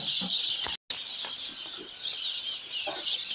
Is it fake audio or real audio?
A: real